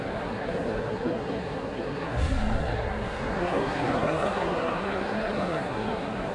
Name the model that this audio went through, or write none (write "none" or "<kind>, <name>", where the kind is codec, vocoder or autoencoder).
codec, SNAC